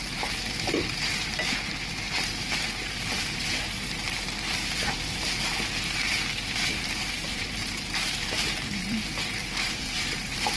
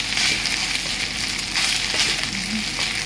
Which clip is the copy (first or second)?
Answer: first